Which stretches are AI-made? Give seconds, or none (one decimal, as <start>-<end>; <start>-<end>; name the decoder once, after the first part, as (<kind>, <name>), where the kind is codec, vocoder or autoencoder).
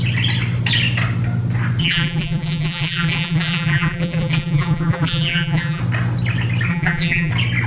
1.8-5.8 (vocoder, BigVGAN v2); 6.7-7.3